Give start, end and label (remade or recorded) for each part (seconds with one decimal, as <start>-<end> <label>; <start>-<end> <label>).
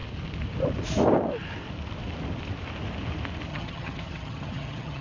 0.0-3.5 recorded; 3.5-5.0 remade